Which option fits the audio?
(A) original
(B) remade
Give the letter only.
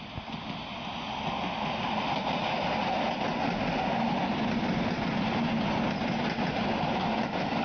A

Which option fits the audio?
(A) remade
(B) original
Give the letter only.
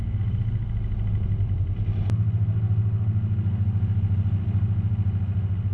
B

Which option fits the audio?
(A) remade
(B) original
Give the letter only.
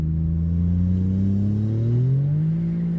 B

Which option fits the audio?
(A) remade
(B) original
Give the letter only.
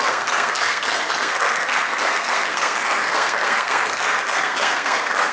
A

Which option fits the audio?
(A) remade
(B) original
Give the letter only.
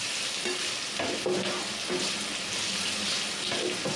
B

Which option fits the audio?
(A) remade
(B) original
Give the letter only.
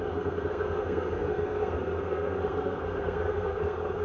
A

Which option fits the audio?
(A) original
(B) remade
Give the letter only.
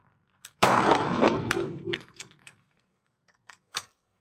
B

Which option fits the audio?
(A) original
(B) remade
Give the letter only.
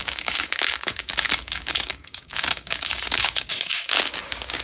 B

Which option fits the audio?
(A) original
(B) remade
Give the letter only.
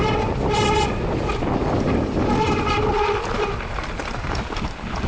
B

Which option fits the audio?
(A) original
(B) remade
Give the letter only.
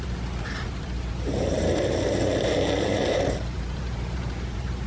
B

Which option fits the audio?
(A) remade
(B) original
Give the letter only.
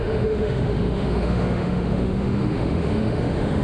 A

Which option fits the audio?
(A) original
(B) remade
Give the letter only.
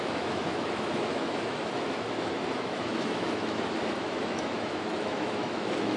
B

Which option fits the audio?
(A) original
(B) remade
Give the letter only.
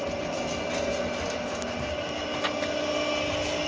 A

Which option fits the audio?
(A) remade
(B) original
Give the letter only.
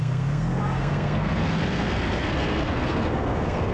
A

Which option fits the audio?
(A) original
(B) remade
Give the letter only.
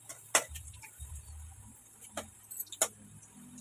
A